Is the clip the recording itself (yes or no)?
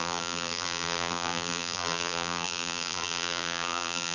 no